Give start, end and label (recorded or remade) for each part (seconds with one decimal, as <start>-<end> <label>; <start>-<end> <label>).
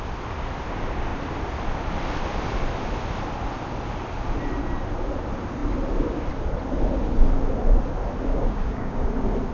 0.0-8.3 recorded; 8.3-9.1 remade; 9.1-9.5 recorded